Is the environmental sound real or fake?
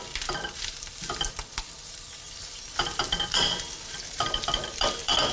fake